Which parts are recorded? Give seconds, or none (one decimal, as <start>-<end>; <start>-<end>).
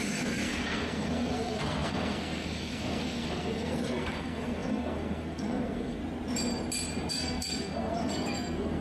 6.0-7.1